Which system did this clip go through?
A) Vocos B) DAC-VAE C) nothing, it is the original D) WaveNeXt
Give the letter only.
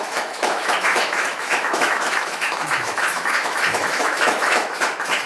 B